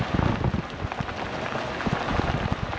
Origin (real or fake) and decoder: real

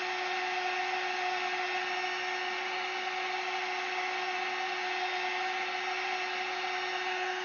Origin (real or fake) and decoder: real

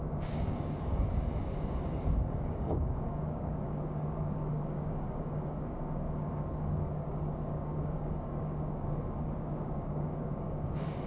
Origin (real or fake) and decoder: fake, codec, DAC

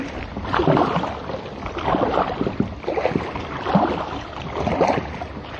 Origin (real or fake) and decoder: real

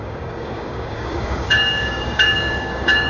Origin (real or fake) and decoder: fake, codec, DAC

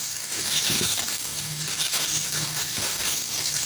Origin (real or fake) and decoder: fake, codec, DAC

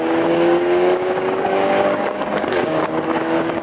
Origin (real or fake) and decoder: fake, codec, DAC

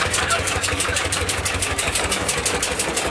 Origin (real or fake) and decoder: fake, codec, DAC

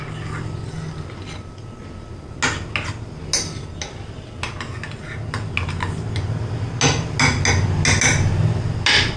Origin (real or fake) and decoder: real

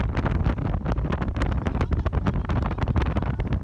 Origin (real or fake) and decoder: real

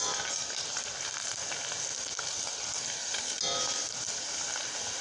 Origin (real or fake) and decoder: real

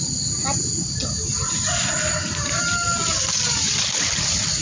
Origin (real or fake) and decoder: real